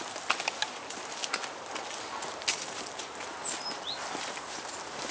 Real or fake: real